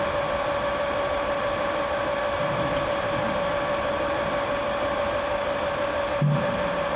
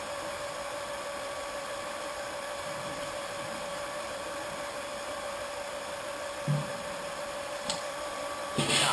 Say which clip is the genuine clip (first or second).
first